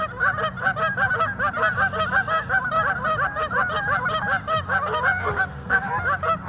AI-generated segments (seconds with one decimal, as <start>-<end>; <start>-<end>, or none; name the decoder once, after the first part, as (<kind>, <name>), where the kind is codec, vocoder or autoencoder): 5.2-5.9 (codec, SNAC)